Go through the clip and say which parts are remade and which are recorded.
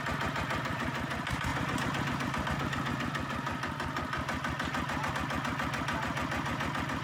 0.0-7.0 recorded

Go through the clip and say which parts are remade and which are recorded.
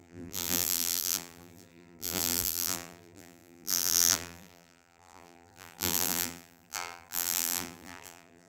0.0-8.5 remade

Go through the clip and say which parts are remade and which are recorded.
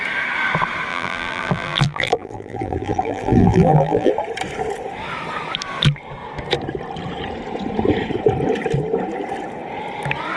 0.0-0.9 recorded; 0.9-4.1 remade; 4.1-10.4 recorded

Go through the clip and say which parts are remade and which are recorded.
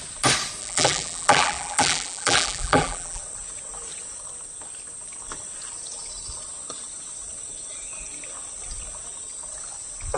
0.0-0.6 recorded; 0.6-3.2 remade; 3.2-10.2 recorded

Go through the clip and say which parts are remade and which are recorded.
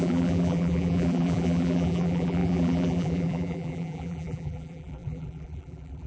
0.0-6.1 remade